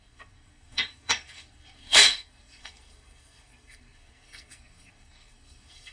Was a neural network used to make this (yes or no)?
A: yes